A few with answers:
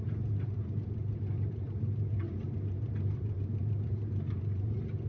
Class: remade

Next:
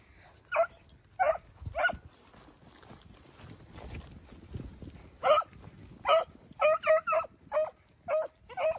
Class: recorded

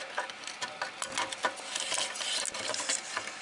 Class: recorded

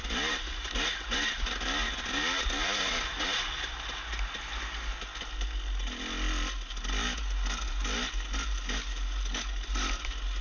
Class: recorded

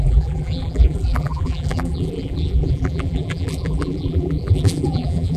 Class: remade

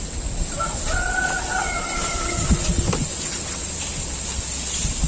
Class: recorded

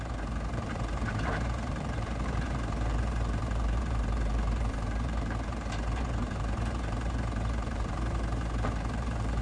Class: remade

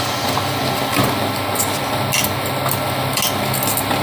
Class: recorded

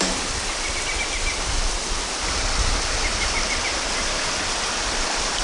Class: recorded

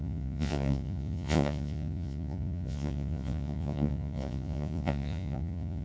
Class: remade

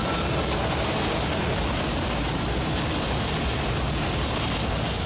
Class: recorded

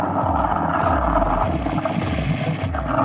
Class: recorded